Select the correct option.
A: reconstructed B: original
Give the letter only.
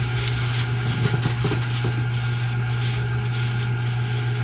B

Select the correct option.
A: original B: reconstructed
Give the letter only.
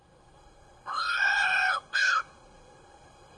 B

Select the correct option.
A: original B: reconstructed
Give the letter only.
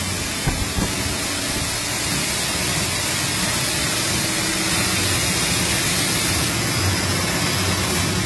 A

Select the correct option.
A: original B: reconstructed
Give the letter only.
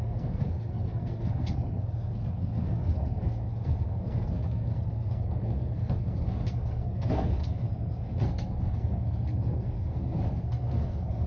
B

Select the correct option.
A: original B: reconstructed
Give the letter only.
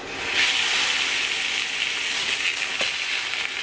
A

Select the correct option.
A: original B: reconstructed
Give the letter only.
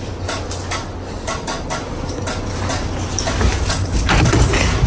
A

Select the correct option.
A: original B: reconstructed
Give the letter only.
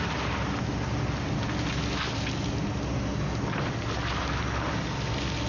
A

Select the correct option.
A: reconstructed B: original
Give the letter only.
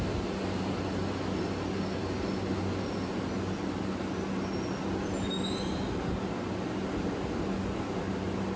B